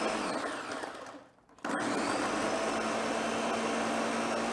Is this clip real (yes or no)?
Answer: yes